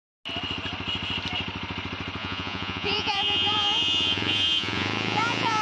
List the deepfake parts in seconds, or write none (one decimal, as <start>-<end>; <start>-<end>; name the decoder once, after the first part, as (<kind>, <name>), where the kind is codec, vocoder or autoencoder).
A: 2.2-5.6 (vocoder, Vocos)